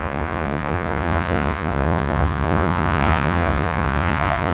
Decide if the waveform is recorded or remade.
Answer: remade